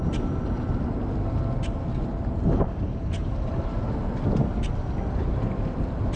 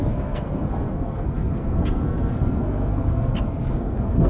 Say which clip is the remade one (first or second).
second